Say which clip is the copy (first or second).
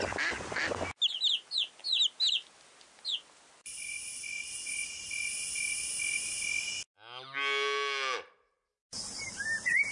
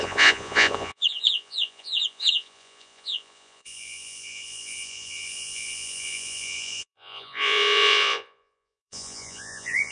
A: second